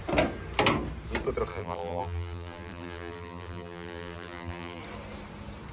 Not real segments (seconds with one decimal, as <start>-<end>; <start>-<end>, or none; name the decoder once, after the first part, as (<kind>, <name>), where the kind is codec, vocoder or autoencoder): 1.5-4.8 (vocoder, BigVGAN v2)